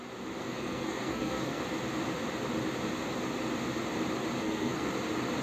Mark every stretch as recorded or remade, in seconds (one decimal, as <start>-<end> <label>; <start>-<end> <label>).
0.0-0.4 recorded; 0.4-1.6 remade; 1.6-4.4 recorded; 4.4-4.9 remade; 4.9-5.4 recorded